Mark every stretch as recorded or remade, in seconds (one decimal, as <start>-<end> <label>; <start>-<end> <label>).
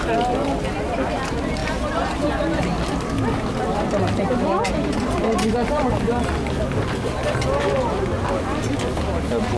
0.0-9.6 recorded